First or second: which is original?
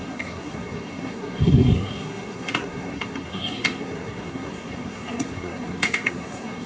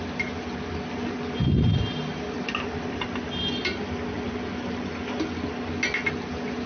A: second